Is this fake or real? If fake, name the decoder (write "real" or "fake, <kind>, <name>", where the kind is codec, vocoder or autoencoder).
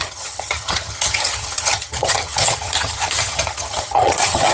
fake, vocoder, HiFi-GAN